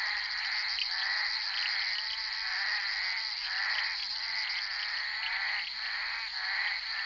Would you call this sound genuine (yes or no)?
yes